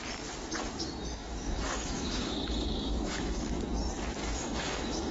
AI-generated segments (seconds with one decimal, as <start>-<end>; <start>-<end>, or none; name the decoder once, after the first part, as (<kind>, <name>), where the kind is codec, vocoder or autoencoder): 1.2-3.5 (autoencoder, DAC-VAE); 4.2-5.1